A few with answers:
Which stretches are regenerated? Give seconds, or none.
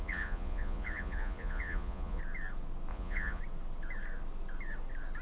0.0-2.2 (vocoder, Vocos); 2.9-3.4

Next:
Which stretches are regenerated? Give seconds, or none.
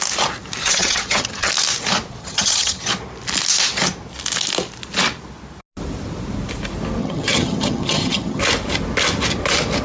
0.6-1.5 (vocoder, HiFi-GAN); 2.2-2.9; 7.0-8.4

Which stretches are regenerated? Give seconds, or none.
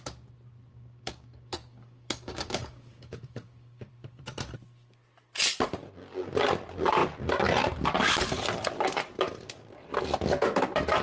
0.7-3.9 (codec, DAC)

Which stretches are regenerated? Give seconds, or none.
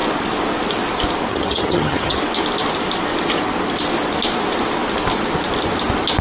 1.3-2.2 (vocoder, HiFi-GAN)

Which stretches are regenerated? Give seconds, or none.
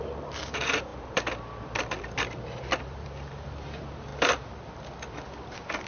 0.0-4.1 (vocoder, BigVGAN v2)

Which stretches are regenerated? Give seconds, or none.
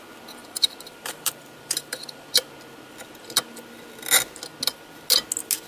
0.4-2.5 (vocoder, BigVGAN v2)